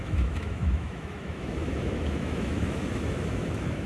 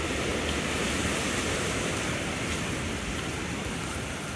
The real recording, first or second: second